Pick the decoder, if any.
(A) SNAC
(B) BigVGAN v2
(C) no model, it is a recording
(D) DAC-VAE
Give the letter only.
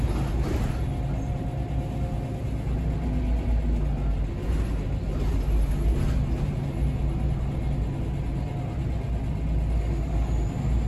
C